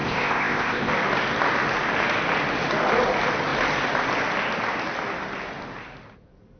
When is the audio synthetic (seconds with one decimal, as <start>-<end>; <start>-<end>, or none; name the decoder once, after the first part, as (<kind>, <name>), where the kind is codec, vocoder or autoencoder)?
0.0-0.9 (codec, ZipCodec)